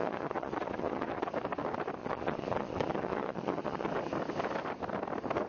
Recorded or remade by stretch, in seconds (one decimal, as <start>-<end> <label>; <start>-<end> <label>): 0.0-1.3 remade; 1.3-2.0 recorded; 2.0-3.9 remade; 3.9-5.5 recorded